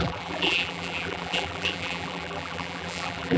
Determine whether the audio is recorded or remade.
remade